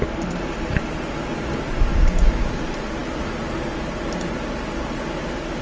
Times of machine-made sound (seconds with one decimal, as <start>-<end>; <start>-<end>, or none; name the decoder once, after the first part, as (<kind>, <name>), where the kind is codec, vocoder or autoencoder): 1.9-2.6 (codec, DAC)